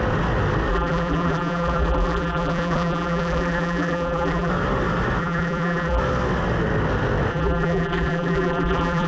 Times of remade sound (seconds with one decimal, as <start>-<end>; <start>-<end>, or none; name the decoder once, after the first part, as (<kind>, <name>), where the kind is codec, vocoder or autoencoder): 0.7-4.5 (vocoder, BigVGAN v2); 5.2-6.0; 7.3-9.1